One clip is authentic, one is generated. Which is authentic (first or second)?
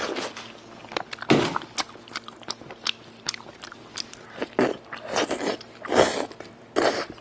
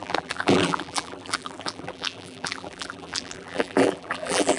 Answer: first